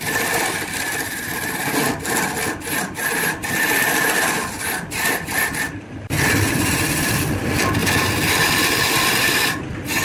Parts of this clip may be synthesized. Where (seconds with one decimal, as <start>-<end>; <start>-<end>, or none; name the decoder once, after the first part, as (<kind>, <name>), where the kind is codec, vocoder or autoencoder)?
7.8-8.5 (vocoder, BigVGAN v2)